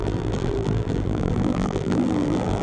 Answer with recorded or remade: remade